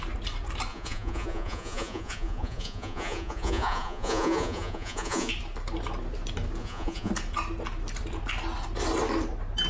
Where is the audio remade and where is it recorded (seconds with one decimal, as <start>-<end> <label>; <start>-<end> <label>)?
0.0-0.7 recorded; 0.7-5.3 remade; 5.3-6.6 recorded; 6.6-7.1 remade; 7.1-9.7 recorded